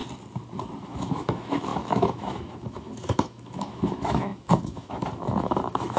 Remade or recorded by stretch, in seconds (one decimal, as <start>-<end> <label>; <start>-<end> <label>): 0.0-0.8 recorded; 0.8-6.0 remade